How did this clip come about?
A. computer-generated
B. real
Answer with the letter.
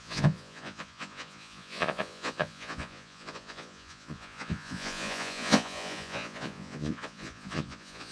A